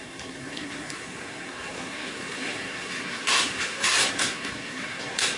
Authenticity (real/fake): fake